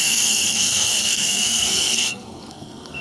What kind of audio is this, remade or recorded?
remade